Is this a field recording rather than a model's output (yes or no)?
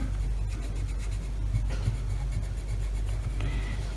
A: yes